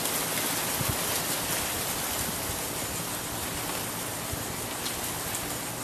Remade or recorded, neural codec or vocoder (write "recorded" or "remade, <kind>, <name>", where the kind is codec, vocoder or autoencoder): recorded